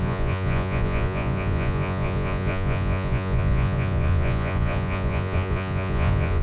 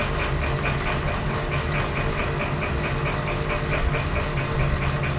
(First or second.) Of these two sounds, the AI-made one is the first